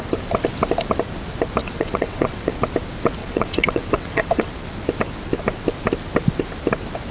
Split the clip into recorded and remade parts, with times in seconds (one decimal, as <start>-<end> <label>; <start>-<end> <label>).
0.0-1.6 recorded; 1.6-2.5 remade; 2.5-3.2 recorded; 3.2-4.5 remade; 4.5-7.1 recorded